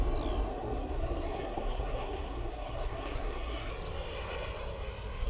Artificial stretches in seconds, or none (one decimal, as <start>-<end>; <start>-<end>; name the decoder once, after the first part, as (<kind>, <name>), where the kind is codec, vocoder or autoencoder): 0.5-3.7 (codec, SNAC)